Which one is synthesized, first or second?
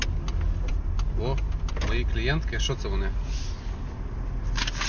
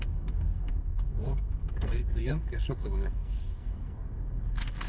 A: second